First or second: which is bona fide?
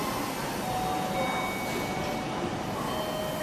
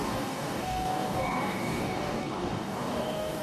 first